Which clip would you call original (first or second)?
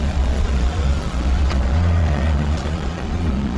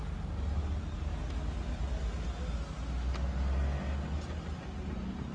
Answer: second